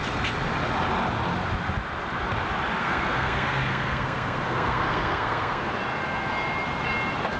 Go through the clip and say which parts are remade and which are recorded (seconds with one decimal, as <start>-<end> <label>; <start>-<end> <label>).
0.0-2.8 recorded; 2.8-5.7 remade; 5.7-7.4 recorded